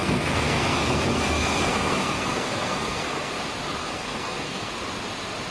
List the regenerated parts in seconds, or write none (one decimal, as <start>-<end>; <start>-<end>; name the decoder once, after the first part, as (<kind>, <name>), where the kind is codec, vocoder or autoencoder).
0.0-3.3 (codec, SNAC); 3.8-4.7